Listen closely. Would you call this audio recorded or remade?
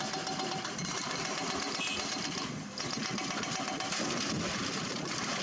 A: recorded